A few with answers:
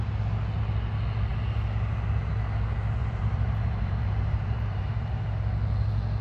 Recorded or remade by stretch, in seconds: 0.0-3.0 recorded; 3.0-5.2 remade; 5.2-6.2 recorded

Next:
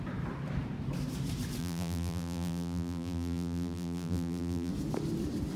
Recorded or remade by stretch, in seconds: 0.0-1.6 recorded; 1.6-4.7 remade; 4.7-5.6 recorded

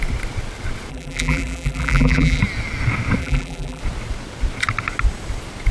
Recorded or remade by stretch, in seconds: 0.0-0.9 recorded; 0.9-2.4 remade; 2.4-3.2 recorded; 3.2-3.8 remade; 3.8-5.7 recorded

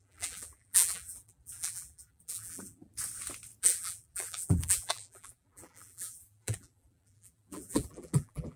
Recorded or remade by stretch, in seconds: 0.0-2.9 remade; 2.9-3.6 recorded; 3.6-8.6 remade

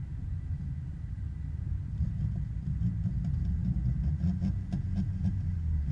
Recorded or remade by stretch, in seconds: 0.0-2.8 remade; 2.8-5.9 recorded

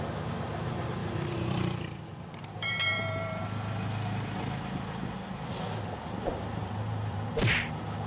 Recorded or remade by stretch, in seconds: 0.0-1.0 recorded; 1.0-3.4 remade; 3.4-6.6 recorded; 6.6-7.3 remade; 7.3-8.1 recorded

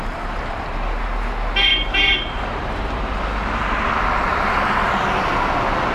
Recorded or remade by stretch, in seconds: 0.0-1.7 recorded; 1.7-3.1 remade; 3.1-4.3 recorded; 4.3-5.0 remade; 5.0-5.9 recorded

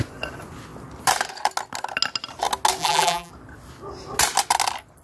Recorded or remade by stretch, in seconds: 0.0-2.8 recorded; 2.8-3.3 remade; 3.3-5.0 recorded